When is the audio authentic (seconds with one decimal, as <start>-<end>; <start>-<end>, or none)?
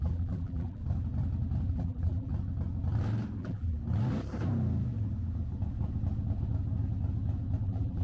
0.8-1.7; 2.3-3.4; 3.8-7.6